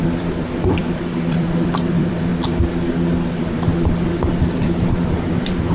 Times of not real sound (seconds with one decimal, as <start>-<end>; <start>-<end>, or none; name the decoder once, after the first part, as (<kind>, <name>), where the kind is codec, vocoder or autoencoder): 0.0-2.3 (vocoder, BigVGAN v2); 3.4-5.7